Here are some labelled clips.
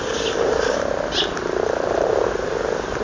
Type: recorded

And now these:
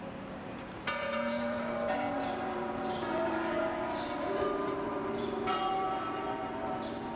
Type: remade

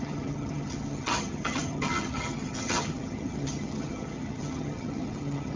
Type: remade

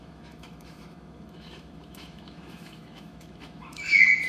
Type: remade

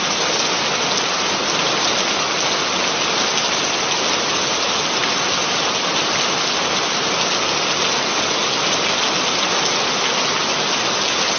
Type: recorded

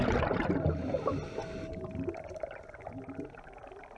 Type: recorded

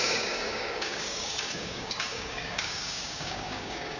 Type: remade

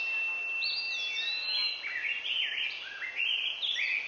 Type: recorded